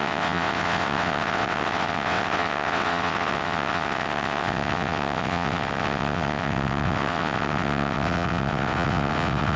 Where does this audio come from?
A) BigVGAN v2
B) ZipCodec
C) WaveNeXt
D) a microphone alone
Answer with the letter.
C